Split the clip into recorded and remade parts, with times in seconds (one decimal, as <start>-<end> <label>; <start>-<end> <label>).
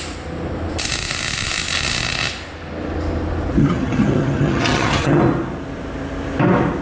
0.0-3.6 recorded; 3.6-5.2 remade; 5.2-6.8 recorded